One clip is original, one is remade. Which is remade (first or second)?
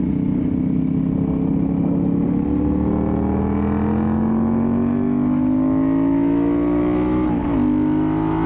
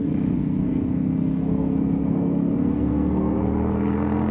second